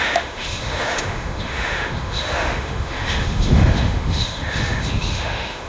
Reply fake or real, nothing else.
fake